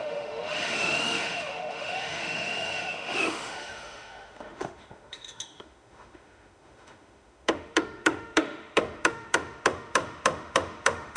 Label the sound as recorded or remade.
remade